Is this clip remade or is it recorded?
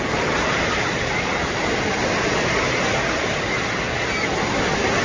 recorded